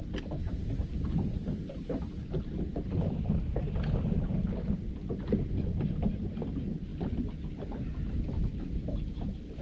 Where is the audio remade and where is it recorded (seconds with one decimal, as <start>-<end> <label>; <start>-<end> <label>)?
0.0-9.6 recorded